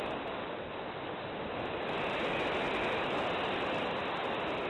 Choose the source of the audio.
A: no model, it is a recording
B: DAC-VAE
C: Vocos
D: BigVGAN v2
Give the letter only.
A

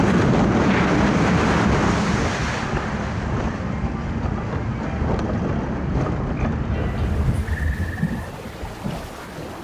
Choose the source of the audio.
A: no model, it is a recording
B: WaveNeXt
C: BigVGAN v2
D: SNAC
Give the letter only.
A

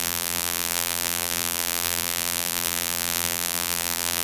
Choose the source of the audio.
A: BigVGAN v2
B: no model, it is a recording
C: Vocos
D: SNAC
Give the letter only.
A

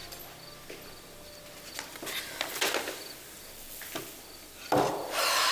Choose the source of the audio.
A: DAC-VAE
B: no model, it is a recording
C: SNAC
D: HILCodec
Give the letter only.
B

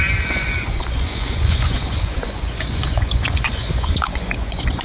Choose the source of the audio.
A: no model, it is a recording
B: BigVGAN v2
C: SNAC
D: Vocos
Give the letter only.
D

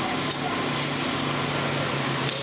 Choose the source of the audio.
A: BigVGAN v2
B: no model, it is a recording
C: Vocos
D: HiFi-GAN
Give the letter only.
B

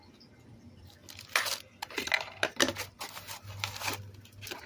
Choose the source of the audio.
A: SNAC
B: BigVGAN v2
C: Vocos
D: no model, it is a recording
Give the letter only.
D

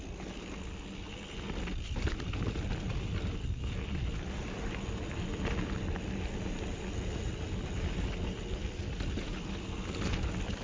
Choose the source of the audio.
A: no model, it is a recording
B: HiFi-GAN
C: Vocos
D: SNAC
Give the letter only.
A